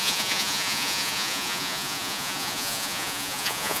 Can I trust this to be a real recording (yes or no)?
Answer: no